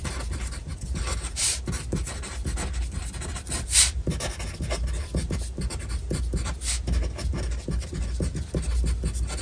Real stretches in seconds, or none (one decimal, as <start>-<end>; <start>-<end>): 0.0-9.4